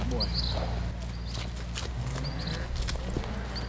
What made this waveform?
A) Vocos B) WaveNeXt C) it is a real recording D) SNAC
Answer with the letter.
C